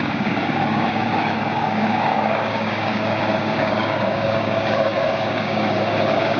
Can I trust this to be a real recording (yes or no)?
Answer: no